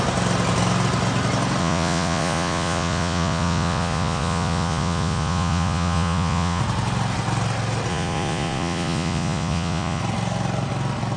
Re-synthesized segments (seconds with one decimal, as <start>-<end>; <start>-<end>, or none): 1.6-6.6; 7.9-10.0